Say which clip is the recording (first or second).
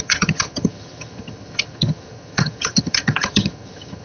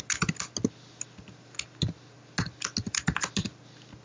second